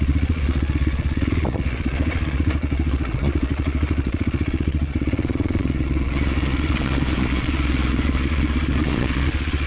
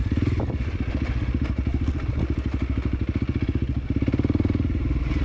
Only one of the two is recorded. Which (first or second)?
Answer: second